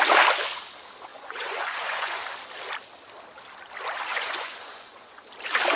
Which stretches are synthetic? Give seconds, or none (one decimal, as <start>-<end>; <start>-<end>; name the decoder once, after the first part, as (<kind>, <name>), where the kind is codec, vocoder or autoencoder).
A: 1.1-2.2 (vocoder, Vocos); 4.1-5.2

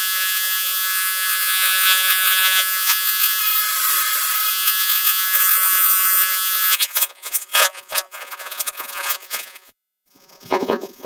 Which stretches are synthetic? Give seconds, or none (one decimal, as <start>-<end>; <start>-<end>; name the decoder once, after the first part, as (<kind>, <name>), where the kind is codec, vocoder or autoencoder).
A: 0.0-3.4 (vocoder, Vocos); 4.5-11.1

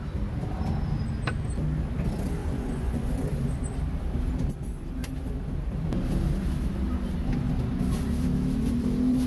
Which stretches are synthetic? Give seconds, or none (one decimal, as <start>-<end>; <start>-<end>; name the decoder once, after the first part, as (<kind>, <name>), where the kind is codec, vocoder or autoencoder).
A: 2.4-3.1 (vocoder, Vocos)

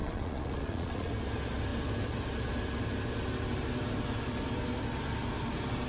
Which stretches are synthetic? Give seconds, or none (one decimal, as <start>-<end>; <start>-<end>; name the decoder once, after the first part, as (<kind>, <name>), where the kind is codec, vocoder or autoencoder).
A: 0.0-1.1 (vocoder, Vocos)